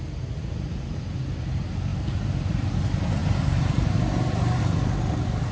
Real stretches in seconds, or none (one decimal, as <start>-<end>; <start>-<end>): 0.0-1.9; 2.4-3.2; 4.6-5.5